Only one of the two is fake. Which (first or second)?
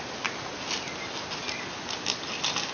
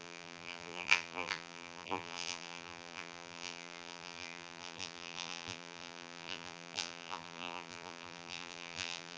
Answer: second